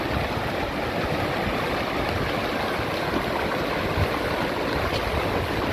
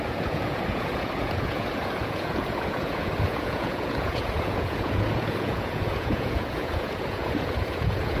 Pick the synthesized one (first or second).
second